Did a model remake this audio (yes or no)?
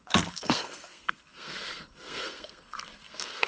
yes